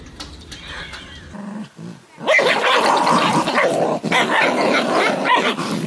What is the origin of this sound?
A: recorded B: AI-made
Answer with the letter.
A